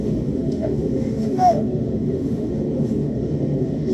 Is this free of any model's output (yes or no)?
no